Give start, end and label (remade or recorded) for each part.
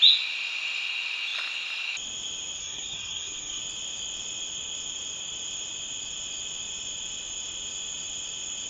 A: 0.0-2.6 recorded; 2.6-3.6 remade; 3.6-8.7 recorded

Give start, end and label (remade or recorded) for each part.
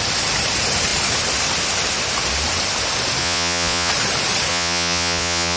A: 0.0-3.2 recorded; 3.2-3.9 remade; 3.9-4.5 recorded; 4.5-5.6 remade